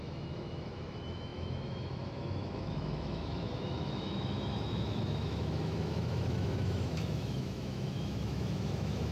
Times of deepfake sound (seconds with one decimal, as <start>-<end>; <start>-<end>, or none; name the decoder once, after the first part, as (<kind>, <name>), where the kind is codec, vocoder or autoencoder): 0.0-9.1 (autoencoder, DAC-VAE)